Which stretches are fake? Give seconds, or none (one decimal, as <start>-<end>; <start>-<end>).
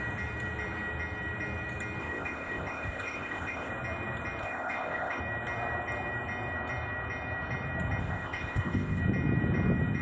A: 2.0-3.7; 4.4-5.2; 8.0-9.0